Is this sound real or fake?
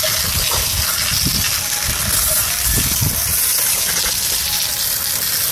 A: real